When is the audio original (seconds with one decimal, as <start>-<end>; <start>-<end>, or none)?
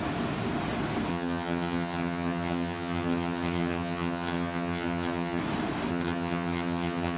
0.0-1.1; 5.4-5.9